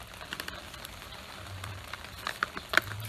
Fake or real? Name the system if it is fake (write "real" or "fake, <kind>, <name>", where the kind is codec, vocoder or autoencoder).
fake, vocoder, BigVGAN v2